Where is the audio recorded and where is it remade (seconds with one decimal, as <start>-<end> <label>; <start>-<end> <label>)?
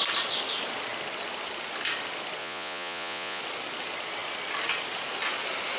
0.0-2.4 recorded; 2.4-3.4 remade; 3.4-5.8 recorded